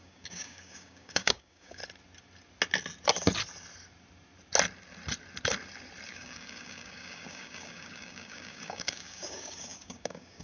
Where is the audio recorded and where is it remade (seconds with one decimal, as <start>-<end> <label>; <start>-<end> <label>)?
0.0-1.8 remade; 1.8-6.1 recorded; 6.1-10.4 remade